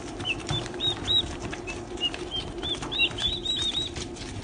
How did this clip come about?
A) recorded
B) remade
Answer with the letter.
B